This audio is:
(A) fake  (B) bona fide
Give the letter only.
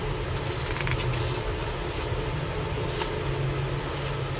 B